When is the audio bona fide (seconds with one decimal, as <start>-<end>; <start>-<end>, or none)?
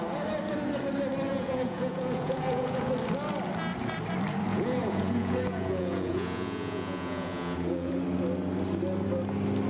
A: 0.0-1.3; 2.9-4.5; 7.9-9.7